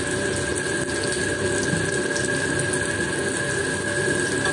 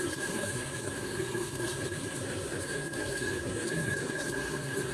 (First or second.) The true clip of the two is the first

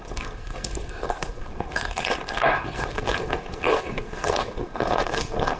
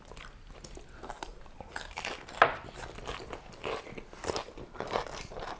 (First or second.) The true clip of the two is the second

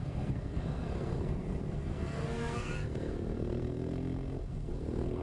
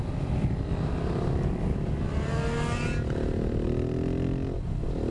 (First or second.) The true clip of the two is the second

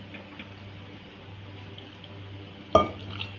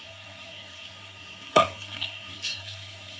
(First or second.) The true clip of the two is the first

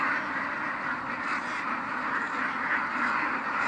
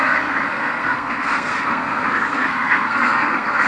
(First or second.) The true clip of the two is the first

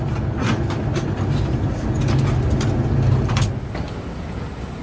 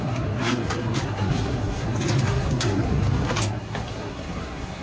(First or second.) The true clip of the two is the first